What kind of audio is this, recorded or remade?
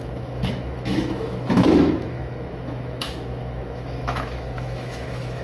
remade